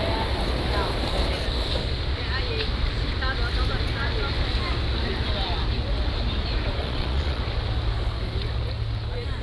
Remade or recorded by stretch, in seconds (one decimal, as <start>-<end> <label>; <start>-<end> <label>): 0.0-6.8 recorded; 6.8-7.4 remade; 7.4-9.4 recorded

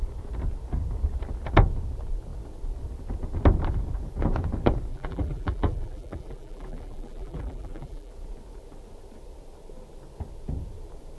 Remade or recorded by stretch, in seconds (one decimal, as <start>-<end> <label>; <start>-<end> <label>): 0.0-4.9 recorded; 4.9-8.1 remade; 8.1-11.2 recorded